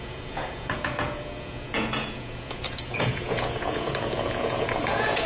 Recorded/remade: remade